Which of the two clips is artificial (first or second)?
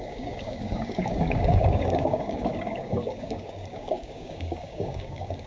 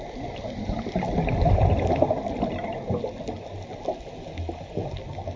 first